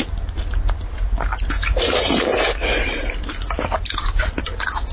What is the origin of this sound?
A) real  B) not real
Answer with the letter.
A